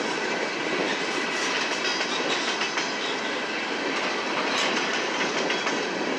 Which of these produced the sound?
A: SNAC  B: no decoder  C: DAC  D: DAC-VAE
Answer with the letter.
B